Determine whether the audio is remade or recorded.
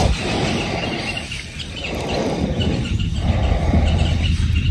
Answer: recorded